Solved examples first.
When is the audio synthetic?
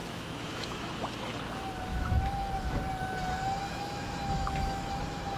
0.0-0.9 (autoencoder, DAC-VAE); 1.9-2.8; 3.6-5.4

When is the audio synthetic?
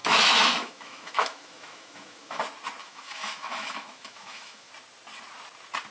0.0-2.4 (autoencoder, DAC-VAE); 2.8-4.7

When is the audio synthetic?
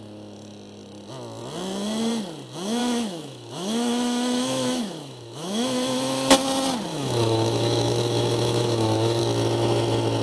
2.8-6.3 (autoencoder, DAC-VAE); 6.9-9.2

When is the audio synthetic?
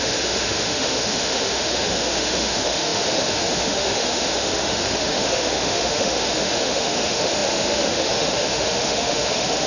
0.0-9.7 (autoencoder, DAC-VAE)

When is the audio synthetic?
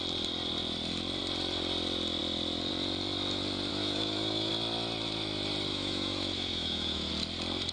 3.7-4.5 (autoencoder, DAC-VAE); 5.7-7.1